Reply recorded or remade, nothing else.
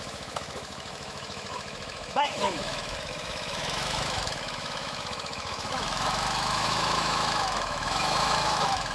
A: remade